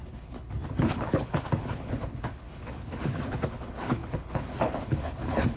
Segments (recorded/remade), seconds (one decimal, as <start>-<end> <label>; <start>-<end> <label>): 0.0-5.6 remade